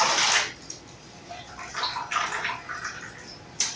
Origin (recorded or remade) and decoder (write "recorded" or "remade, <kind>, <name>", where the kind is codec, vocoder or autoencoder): recorded